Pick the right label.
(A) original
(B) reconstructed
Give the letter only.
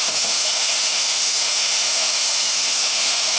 B